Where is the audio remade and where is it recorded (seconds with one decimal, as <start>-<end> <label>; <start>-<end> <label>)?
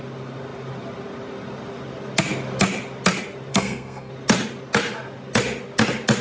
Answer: 0.0-3.5 recorded; 3.5-4.1 remade; 4.1-6.2 recorded